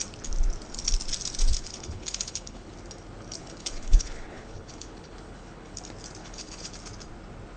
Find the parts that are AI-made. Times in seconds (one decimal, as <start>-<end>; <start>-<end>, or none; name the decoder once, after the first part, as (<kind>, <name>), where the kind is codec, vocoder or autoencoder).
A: 1.5-2.7 (codec, HILCodec); 3.4-5.8; 6.2-6.7